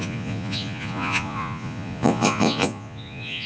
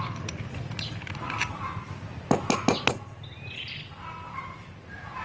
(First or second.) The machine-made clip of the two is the first